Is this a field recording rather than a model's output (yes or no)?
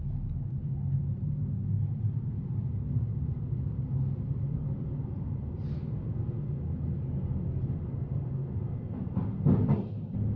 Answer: yes